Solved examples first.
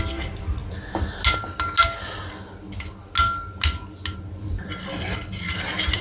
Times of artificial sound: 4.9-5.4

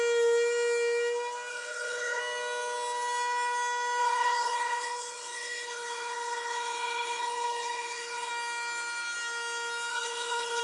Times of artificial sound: 1.5-2.2; 4.0-8.3; 9.9-10.6

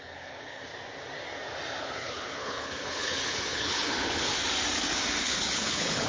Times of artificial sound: 0.0-0.7; 1.8-4.4; 5.2-6.1

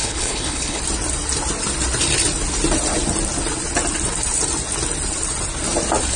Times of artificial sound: 0.0-0.8

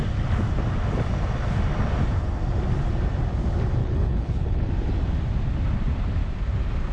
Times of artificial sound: 3.8-4.7